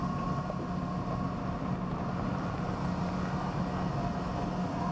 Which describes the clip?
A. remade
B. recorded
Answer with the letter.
B